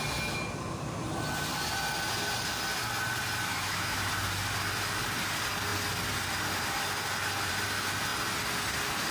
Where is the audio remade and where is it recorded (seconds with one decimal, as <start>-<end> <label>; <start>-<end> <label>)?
0.0-3.5 recorded; 3.5-4.1 remade; 4.1-9.1 recorded